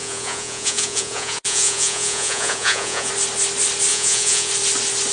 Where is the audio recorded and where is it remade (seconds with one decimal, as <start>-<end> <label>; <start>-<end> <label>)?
0.0-3.1 remade; 3.1-3.9 recorded; 3.9-4.5 remade; 4.5-5.1 recorded

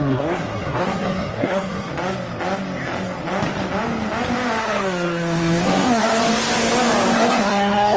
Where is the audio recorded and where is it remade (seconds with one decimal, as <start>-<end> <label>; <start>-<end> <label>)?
0.0-1.9 remade; 1.9-4.6 recorded; 4.6-6.2 remade; 6.2-7.1 recorded; 7.1-8.0 remade

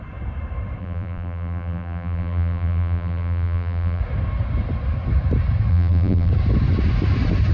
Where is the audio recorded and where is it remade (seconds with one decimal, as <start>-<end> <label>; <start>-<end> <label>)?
0.0-0.8 recorded; 0.8-4.0 remade; 4.0-5.7 recorded; 5.7-6.3 remade; 6.3-7.5 recorded